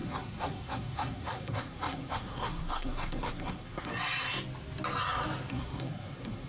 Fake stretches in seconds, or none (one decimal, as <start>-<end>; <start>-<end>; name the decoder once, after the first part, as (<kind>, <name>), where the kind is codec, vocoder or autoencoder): 0.0-3.9 (codec, SNAC); 5.5-6.5